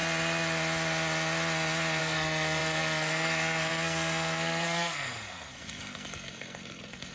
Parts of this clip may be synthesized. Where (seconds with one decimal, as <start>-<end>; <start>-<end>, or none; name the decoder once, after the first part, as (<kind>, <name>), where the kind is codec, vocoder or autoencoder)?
2.0-7.1 (codec, SNAC)